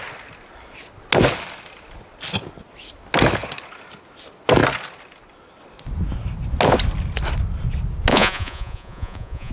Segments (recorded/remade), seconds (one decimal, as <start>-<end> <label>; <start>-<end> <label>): 0.0-8.1 recorded; 8.1-9.5 remade